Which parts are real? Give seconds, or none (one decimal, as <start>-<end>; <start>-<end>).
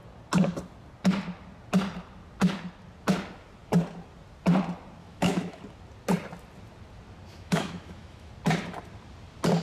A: 0.0-5.0; 5.6-7.3; 8.3-9.6